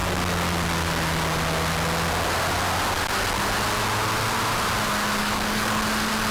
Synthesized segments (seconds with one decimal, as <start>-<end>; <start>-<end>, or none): 5.2-5.8